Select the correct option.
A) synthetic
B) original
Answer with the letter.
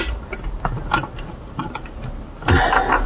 B